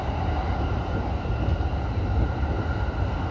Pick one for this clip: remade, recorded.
recorded